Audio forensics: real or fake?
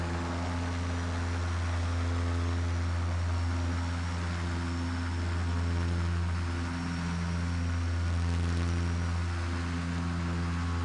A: real